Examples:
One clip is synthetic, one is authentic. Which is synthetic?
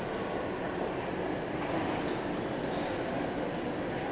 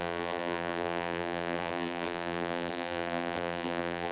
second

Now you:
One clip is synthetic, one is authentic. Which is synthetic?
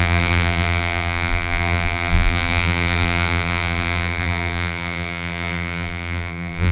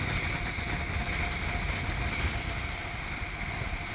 first